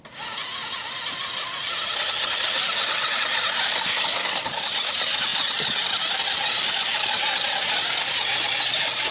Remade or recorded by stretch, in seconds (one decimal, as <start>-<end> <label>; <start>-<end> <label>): 0.0-1.2 remade; 1.2-4.0 recorded; 4.0-5.3 remade; 5.3-7.6 recorded; 7.6-9.1 remade